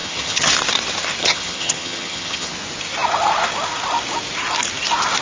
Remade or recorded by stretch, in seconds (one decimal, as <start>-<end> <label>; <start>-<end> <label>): 0.0-0.5 remade; 0.5-1.2 recorded; 1.2-2.5 remade; 2.5-5.2 recorded